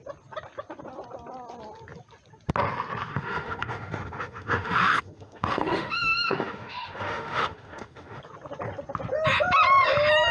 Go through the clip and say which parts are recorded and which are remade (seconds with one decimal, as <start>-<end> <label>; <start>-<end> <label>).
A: 0.0-3.1 recorded; 3.1-8.2 remade; 8.2-10.3 recorded